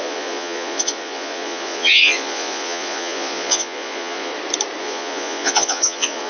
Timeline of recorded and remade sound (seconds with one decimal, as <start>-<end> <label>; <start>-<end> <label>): 0.0-4.3 remade; 4.3-4.8 recorded; 4.8-6.3 remade